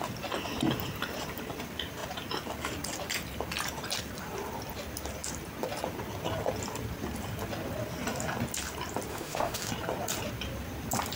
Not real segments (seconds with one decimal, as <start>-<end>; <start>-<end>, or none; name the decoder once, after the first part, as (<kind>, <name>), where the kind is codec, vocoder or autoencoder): 9.1-9.7 (autoencoder, DAC-VAE)